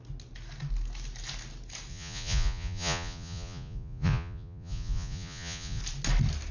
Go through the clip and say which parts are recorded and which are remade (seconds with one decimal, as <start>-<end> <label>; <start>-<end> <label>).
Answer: 0.0-1.9 recorded; 1.9-5.8 remade; 5.8-6.5 recorded